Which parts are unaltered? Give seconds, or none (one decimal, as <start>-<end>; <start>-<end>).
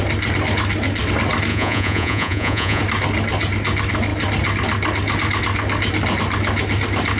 0.0-1.5; 2.8-7.2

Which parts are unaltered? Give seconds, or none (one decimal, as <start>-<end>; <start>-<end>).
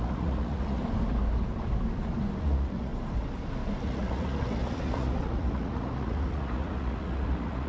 0.8-2.4; 2.9-3.8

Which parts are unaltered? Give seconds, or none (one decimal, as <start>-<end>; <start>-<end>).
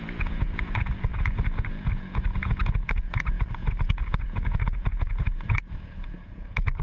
none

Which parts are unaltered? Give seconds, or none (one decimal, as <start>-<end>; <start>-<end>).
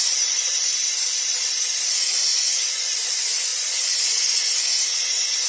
0.8-1.7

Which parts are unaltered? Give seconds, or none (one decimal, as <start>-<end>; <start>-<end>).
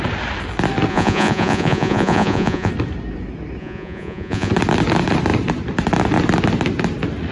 0.0-0.9; 2.7-3.6; 4.5-7.3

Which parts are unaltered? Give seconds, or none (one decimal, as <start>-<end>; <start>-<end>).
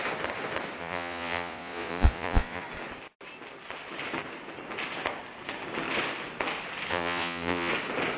0.0-0.8; 2.6-6.9; 7.7-8.2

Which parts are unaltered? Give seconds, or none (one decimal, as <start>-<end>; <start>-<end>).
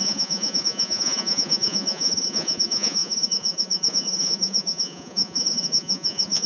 none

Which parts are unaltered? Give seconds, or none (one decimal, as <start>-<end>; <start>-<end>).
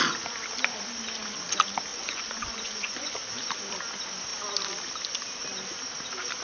0.0-1.9; 3.1-6.4